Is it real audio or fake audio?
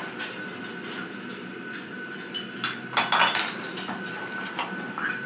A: real